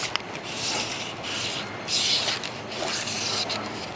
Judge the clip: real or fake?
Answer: real